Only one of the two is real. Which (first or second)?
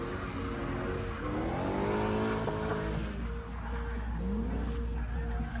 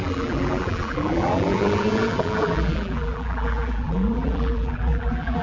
first